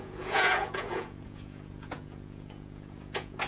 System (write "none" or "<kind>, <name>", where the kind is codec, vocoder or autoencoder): vocoder, Vocos